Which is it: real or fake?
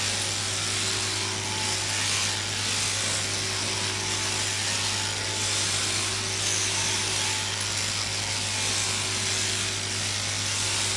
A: real